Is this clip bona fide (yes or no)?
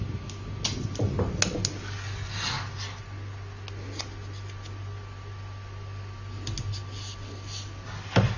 yes